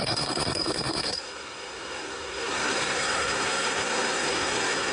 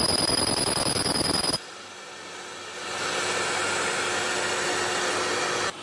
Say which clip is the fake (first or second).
first